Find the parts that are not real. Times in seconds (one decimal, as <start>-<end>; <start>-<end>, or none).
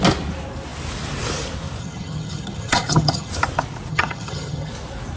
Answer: 1.8-3.3; 3.9-4.7